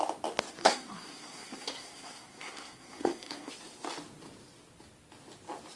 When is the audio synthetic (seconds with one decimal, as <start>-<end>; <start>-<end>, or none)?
0.6-3.5